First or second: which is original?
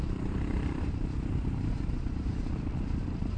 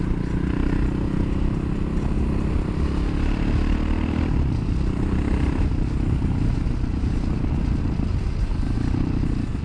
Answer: second